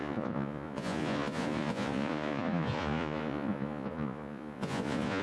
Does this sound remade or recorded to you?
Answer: remade